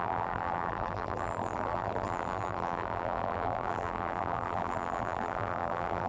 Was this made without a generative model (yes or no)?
no